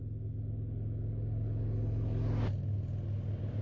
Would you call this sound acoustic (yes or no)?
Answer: yes